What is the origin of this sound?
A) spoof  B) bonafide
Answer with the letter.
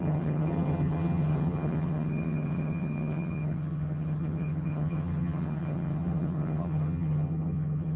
A